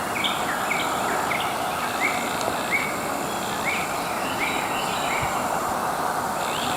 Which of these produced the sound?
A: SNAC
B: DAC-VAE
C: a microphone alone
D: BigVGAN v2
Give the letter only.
C